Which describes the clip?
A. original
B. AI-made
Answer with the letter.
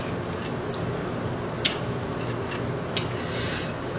A